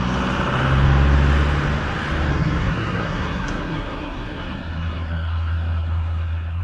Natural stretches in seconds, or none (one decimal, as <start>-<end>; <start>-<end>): 0.0-2.3